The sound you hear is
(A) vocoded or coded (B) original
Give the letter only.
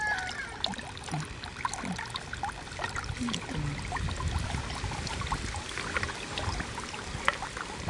B